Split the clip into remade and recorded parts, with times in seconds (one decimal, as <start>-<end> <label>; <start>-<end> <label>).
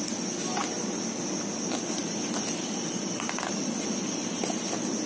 0.0-0.6 recorded; 0.6-1.2 remade; 1.2-2.0 recorded; 2.0-3.5 remade; 3.5-5.1 recorded